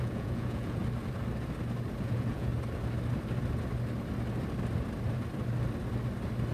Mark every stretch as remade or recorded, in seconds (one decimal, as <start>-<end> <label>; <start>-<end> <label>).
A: 0.0-0.8 remade; 0.8-2.0 recorded; 2.0-2.5 remade; 2.5-6.5 recorded